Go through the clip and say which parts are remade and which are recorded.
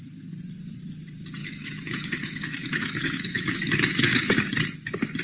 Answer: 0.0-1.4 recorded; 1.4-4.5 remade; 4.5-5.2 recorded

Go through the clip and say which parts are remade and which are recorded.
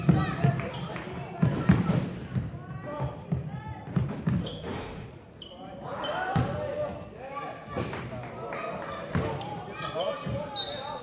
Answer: 0.0-4.4 recorded; 4.4-5.1 remade; 5.1-11.0 recorded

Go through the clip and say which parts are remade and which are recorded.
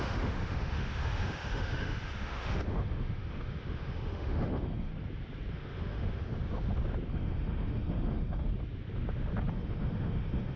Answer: 0.0-4.9 remade; 4.9-5.5 recorded; 5.5-6.3 remade; 6.3-7.1 recorded; 7.1-8.5 remade; 8.5-9.5 recorded; 9.5-10.6 remade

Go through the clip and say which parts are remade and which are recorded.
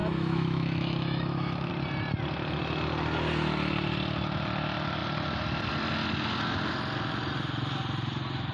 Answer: 0.0-1.7 remade; 1.7-8.5 recorded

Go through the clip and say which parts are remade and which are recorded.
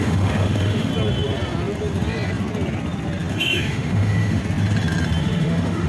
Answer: 0.0-0.9 remade; 0.9-3.3 recorded; 3.3-4.4 remade; 4.4-5.2 recorded; 5.2-5.9 remade